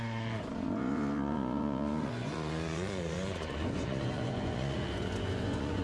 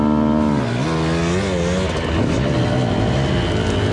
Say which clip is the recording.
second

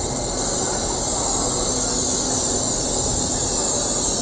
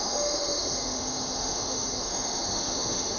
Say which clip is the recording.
first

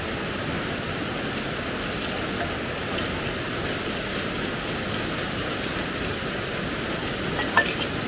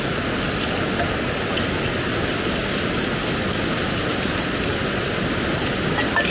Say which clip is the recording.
second